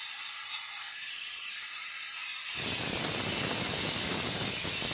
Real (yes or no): yes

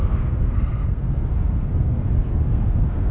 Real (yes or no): no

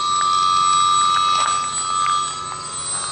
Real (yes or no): yes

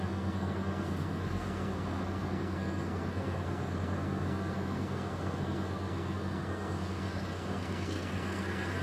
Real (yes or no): no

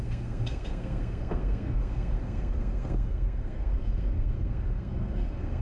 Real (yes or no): no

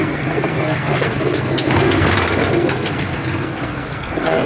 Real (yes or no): no